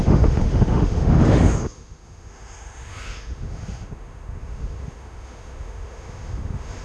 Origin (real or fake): fake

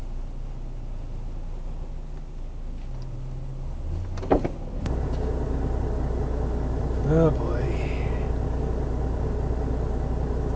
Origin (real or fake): real